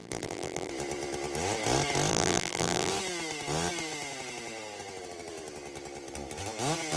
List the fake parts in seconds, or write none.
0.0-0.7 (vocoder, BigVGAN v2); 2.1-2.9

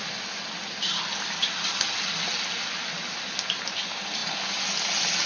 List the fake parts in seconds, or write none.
none

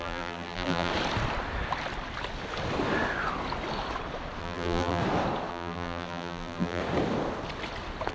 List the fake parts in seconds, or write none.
0.0-0.9 (vocoder, BigVGAN v2); 4.4-5.0; 5.5-6.8

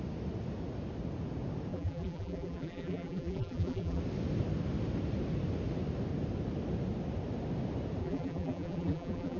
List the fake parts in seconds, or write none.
1.7-4.0 (vocoder, BigVGAN v2); 8.0-9.4

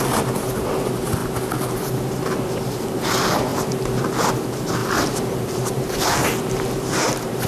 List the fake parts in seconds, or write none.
4.8-6.7 (vocoder, BigVGAN v2)

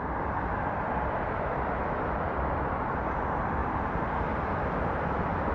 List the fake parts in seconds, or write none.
3.6-4.5 (vocoder, BigVGAN v2)

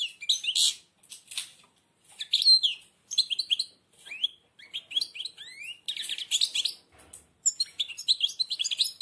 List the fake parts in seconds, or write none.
none

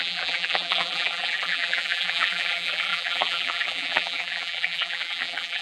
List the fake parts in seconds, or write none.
0.0-5.6 (vocoder, BigVGAN v2)